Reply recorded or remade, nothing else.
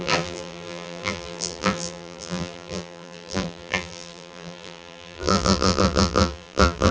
remade